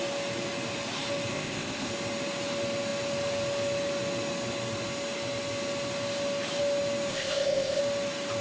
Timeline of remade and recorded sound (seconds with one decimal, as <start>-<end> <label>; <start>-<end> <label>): 0.0-1.3 recorded; 1.3-1.9 remade; 1.9-7.1 recorded; 7.1-7.8 remade; 7.8-8.4 recorded

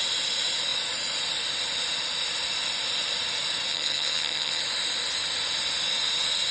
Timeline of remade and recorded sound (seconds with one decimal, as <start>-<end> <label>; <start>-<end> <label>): 0.0-3.7 recorded; 3.7-4.6 remade; 4.6-6.5 recorded

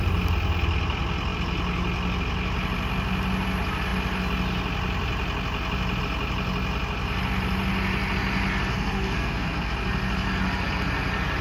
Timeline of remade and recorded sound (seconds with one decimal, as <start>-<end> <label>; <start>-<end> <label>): 0.0-8.7 recorded; 8.7-9.7 remade; 9.7-11.4 recorded

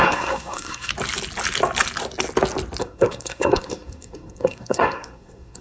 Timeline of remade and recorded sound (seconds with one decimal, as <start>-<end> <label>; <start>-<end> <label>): 0.0-0.9 remade; 0.9-2.8 recorded; 2.8-5.6 remade

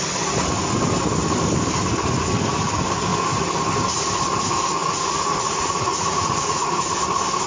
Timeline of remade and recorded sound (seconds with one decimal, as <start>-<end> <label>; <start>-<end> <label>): 0.0-4.8 recorded; 4.8-6.7 remade; 6.7-7.5 recorded

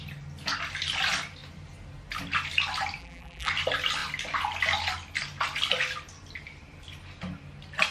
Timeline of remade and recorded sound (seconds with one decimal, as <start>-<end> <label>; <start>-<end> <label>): 0.0-3.0 recorded; 3.0-3.5 remade; 3.5-7.9 recorded